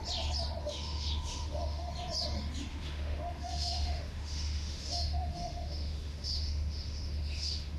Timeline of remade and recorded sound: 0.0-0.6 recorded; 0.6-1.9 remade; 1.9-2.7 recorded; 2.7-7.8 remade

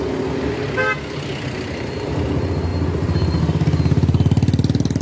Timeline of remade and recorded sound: 0.0-2.7 recorded; 2.7-3.4 remade; 3.4-5.0 recorded